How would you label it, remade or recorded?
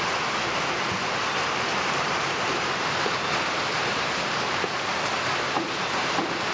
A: remade